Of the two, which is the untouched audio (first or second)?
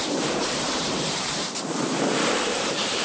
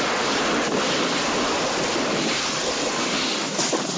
second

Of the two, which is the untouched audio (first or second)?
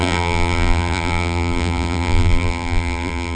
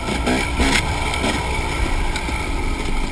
second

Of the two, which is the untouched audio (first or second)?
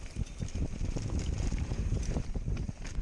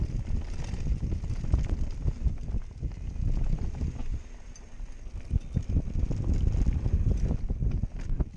second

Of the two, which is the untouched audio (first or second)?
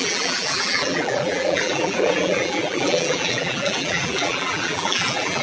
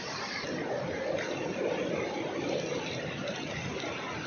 second